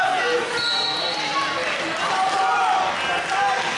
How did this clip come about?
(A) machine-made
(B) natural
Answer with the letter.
B